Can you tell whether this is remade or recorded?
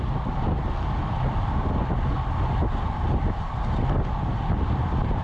recorded